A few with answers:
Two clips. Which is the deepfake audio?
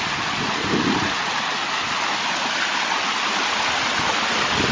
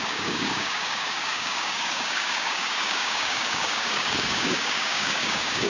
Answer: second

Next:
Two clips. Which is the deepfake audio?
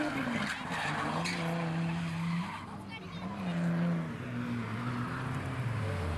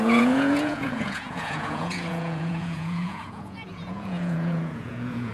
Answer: second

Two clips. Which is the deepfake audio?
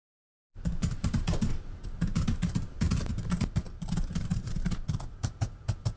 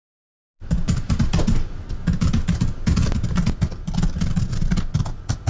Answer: first